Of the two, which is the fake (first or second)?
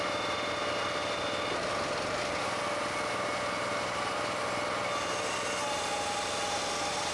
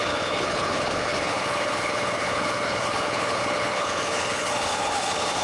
second